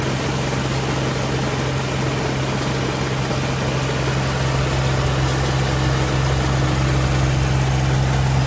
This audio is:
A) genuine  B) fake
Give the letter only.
A